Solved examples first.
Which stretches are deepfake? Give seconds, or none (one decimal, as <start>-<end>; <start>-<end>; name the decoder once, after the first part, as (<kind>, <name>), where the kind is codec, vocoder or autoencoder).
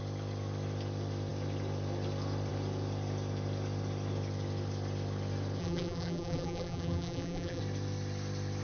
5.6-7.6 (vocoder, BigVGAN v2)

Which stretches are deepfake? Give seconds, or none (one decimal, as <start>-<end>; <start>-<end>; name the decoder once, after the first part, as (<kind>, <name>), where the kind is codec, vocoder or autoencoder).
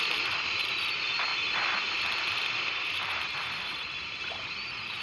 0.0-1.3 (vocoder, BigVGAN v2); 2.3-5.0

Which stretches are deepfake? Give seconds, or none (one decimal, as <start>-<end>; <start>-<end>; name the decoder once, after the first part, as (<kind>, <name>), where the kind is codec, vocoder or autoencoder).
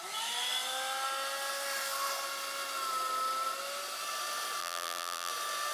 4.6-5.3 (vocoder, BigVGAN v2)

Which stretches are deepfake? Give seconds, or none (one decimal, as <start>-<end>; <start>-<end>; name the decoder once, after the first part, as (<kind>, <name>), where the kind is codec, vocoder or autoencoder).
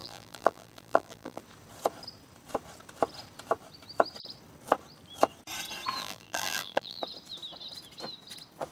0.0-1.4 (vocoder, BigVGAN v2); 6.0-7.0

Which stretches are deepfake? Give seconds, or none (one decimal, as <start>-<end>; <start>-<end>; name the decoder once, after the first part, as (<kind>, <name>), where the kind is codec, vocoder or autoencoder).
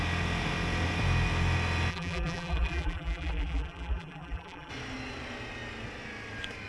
1.9-4.7 (vocoder, BigVGAN v2)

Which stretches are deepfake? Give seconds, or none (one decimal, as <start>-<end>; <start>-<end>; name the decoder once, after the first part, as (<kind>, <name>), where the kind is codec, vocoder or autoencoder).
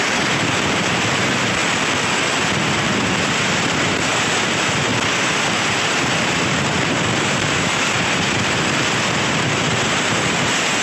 0.0-1.6 (vocoder, BigVGAN v2); 2.3-4.9; 5.4-10.8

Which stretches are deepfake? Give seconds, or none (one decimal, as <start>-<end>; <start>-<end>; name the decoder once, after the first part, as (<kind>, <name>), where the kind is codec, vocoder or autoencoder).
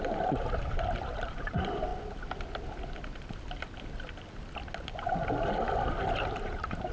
0.0-1.9 (vocoder, BigVGAN v2); 6.0-6.9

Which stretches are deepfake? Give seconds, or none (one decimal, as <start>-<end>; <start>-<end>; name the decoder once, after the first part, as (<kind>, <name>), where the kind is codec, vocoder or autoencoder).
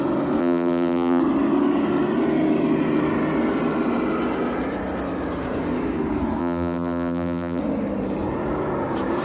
0.4-1.2 (vocoder, BigVGAN v2); 6.4-7.6